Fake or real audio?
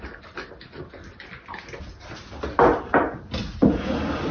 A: real